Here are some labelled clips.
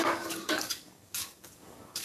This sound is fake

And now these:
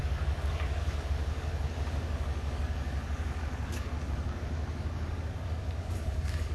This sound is fake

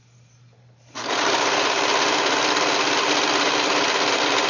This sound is real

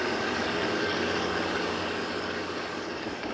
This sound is fake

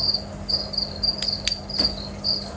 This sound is real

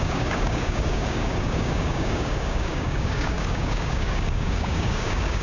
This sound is fake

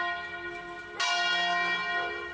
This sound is real